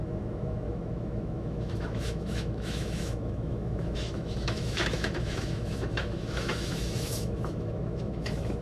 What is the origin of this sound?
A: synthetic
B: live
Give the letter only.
A